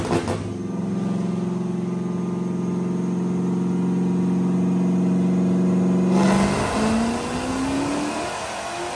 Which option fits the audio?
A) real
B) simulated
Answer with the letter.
A